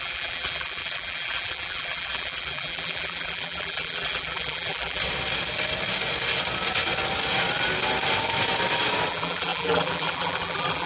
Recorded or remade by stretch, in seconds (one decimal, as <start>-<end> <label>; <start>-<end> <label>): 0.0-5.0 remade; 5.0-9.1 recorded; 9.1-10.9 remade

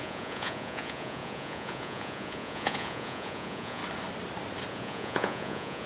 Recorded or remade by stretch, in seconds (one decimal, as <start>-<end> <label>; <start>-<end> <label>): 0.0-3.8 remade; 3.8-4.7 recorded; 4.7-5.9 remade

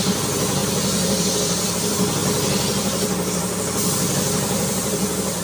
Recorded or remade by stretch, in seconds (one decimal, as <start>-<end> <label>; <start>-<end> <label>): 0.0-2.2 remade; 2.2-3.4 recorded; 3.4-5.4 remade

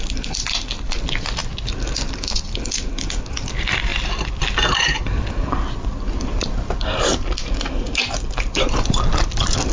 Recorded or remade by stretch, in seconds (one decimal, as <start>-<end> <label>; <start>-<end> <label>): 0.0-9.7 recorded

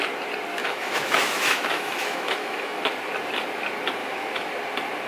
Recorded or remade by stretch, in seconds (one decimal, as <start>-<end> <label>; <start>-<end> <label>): 0.0-0.6 recorded; 0.6-2.8 remade; 2.8-4.0 recorded; 4.0-4.5 remade; 4.5-5.1 recorded

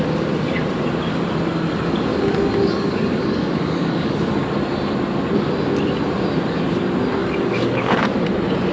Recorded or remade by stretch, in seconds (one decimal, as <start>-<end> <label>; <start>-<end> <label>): 0.0-2.1 recorded; 2.1-4.3 remade; 4.3-7.2 recorded; 7.2-8.0 remade; 8.0-8.7 recorded

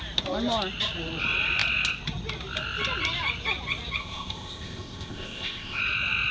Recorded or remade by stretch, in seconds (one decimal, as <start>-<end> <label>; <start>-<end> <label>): 0.0-4.0 recorded; 4.0-5.8 remade; 5.8-6.3 recorded

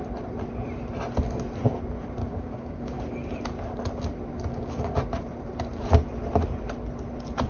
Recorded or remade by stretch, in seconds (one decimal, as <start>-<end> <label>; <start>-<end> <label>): 0.0-2.2 recorded; 2.2-3.0 remade; 3.0-4.5 recorded; 4.5-5.0 remade; 5.0-7.5 recorded